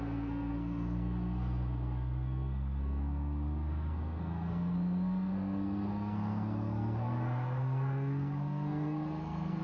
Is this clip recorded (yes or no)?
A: no